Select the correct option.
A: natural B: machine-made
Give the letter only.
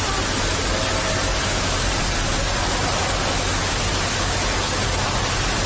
A